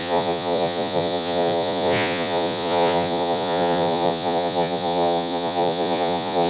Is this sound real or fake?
fake